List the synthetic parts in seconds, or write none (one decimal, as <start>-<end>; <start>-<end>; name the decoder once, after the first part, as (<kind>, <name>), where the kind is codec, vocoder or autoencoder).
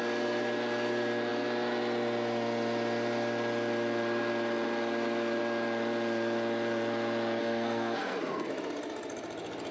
7.4-8.5 (codec, SNAC)